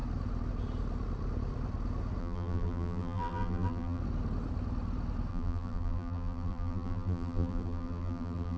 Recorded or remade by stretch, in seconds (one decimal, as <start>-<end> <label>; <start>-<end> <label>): 0.0-2.2 recorded; 2.2-4.0 remade; 4.0-5.3 recorded; 5.3-8.6 remade